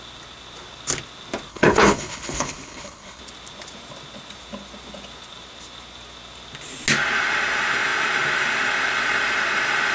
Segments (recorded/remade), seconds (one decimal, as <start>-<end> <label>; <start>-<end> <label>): 0.0-1.5 recorded; 1.5-3.2 remade; 3.2-9.9 recorded